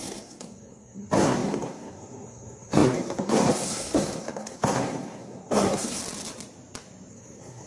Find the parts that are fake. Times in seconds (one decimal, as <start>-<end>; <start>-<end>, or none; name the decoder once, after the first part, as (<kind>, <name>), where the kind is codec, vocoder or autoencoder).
0.0-6.0 (codec, SNAC); 7.1-7.7